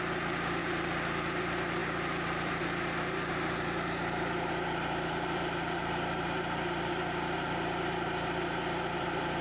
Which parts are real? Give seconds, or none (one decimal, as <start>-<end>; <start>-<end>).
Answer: 0.6-1.4